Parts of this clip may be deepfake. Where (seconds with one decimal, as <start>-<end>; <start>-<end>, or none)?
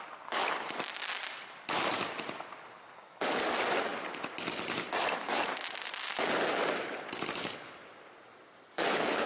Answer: none